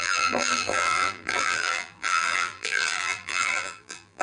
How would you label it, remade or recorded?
remade